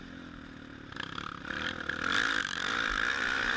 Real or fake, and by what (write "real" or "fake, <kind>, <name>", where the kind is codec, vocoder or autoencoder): fake, vocoder, BigVGAN v2